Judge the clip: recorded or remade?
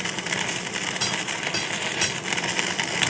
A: remade